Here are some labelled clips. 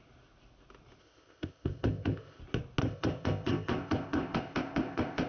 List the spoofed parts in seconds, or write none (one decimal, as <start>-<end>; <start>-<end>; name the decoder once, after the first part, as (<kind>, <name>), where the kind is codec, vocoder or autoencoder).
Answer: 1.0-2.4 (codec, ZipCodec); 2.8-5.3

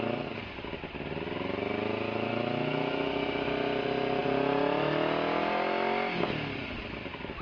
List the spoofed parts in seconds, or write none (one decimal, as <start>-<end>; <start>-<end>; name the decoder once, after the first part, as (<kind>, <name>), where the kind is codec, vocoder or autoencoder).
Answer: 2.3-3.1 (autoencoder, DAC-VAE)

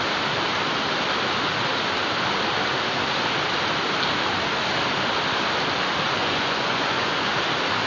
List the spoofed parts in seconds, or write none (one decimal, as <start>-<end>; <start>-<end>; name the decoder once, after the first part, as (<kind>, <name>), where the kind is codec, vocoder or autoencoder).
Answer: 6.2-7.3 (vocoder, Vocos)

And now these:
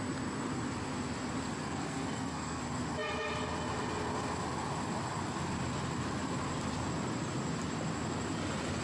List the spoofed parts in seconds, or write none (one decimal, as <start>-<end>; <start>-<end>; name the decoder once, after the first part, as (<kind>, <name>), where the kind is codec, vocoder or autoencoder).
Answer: 1.6-2.6 (codec, SNAC)

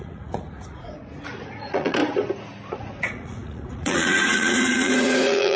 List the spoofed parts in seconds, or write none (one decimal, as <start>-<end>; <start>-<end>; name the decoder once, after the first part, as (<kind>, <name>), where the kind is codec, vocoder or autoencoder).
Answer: 0.0-2.0 (vocoder, Vocos); 2.7-5.6

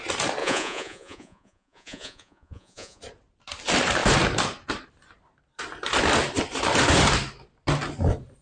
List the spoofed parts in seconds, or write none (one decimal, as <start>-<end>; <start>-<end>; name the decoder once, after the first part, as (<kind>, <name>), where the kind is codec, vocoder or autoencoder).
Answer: 0.4-3.0 (vocoder, Vocos)